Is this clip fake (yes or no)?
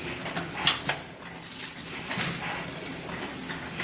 no